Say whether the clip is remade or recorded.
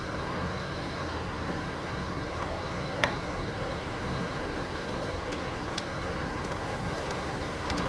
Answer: remade